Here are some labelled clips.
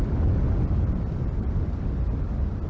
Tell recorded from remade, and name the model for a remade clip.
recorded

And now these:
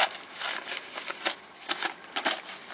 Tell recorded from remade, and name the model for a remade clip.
recorded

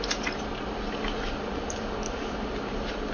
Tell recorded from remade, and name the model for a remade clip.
remade, vocoder, BigVGAN v2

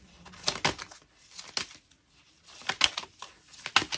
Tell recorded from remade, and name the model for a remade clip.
recorded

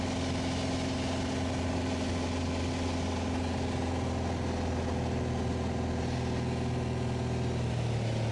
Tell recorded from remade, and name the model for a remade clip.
recorded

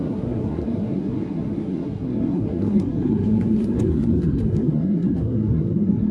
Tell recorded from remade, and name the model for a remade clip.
remade, codec, SNAC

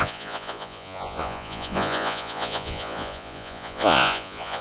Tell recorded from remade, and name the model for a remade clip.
remade, vocoder, Vocos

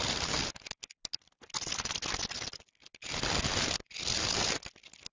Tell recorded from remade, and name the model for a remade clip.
recorded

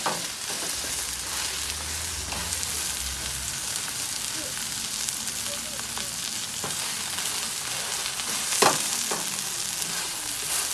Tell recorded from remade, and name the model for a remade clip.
recorded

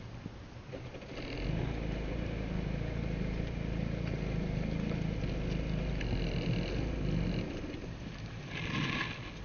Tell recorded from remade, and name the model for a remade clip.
recorded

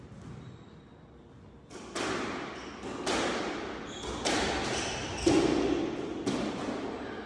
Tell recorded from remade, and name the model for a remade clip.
recorded